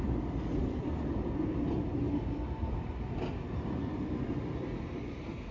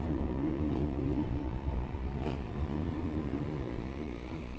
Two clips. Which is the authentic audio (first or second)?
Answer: first